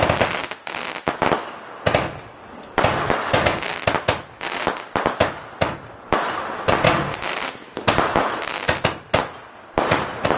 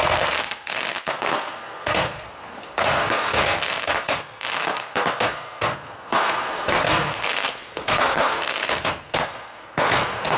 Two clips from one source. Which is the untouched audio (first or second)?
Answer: first